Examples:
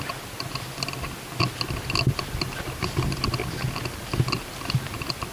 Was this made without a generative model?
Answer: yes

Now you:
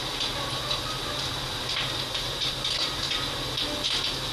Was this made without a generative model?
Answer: yes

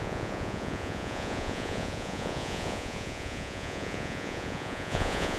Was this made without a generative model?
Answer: no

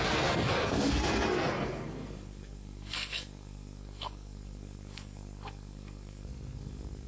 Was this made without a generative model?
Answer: no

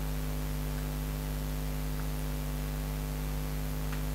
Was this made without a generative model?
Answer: yes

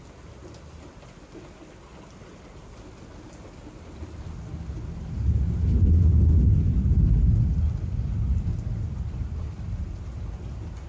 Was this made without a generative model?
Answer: yes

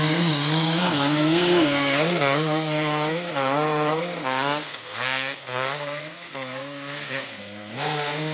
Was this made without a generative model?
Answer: no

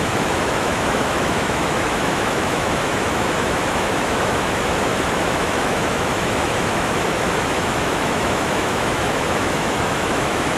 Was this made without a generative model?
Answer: no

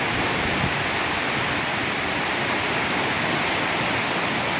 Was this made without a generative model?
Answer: yes